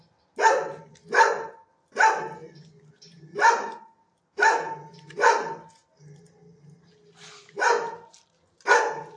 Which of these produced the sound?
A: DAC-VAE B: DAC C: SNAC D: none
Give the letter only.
D